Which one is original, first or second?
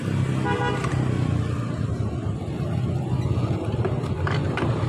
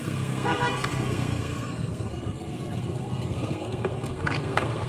first